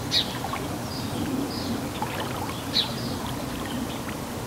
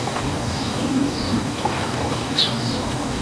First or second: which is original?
first